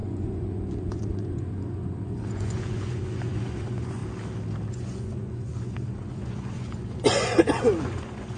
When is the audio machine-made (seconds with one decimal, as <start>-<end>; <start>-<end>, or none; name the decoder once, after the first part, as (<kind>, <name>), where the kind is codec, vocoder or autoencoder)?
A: 0.0-4.0 (vocoder, Vocos); 4.7-8.4